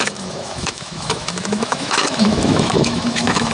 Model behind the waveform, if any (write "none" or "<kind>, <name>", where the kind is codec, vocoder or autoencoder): autoencoder, DAC-VAE